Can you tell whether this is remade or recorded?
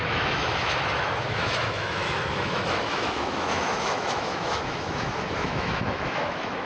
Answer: remade